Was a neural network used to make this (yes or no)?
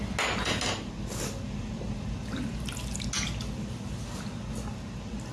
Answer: no